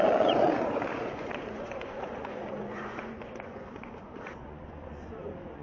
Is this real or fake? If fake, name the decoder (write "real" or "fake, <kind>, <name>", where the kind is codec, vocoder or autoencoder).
fake, vocoder, Vocos